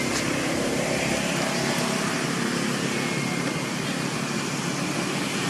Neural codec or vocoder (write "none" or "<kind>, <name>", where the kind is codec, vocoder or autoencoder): none